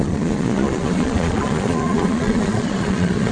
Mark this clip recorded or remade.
remade